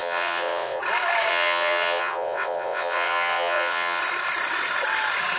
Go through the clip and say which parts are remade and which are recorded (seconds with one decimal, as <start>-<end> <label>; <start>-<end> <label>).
0.0-0.8 remade; 0.8-1.3 recorded; 1.3-4.0 remade; 4.0-5.4 recorded